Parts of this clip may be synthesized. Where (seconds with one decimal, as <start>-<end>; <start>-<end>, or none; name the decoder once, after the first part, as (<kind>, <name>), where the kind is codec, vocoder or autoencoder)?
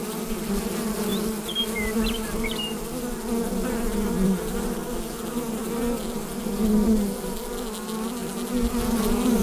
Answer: none